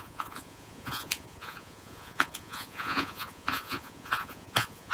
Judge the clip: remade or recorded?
remade